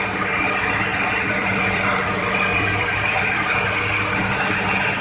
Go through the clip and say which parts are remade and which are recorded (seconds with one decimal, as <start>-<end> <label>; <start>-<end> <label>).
0.0-0.9 recorded; 0.9-3.6 remade; 3.6-5.0 recorded